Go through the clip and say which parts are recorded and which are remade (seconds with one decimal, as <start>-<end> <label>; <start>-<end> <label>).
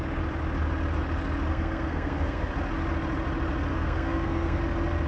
0.0-1.5 recorded; 1.5-2.5 remade; 2.5-3.7 recorded; 3.7-4.6 remade; 4.6-5.1 recorded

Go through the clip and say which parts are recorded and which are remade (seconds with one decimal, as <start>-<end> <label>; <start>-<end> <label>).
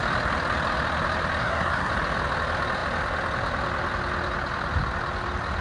0.0-1.4 recorded; 1.4-1.9 remade; 1.9-5.6 recorded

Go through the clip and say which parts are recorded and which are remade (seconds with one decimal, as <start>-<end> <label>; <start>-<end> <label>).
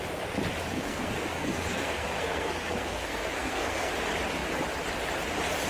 0.0-0.7 recorded; 0.7-3.9 remade; 3.9-5.7 recorded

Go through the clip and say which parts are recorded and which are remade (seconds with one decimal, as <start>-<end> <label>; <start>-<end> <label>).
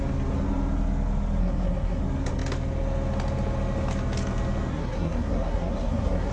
0.0-1.4 recorded; 1.4-2.0 remade; 2.0-4.7 recorded; 4.7-6.3 remade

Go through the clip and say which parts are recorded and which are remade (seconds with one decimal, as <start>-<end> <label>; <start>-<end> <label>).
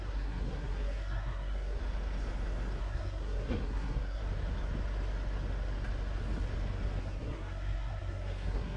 0.0-1.8 remade; 1.8-2.8 recorded; 2.8-4.2 remade; 4.2-7.0 recorded; 7.0-8.8 remade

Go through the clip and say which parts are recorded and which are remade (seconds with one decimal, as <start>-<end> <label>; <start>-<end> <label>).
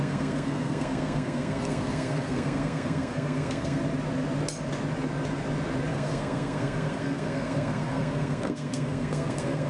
0.0-3.8 remade; 3.8-5.9 recorded; 5.9-9.7 remade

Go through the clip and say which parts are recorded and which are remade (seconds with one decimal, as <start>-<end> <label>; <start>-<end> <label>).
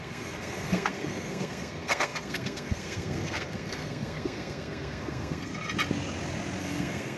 0.0-5.5 remade; 5.5-6.6 recorded; 6.6-7.2 remade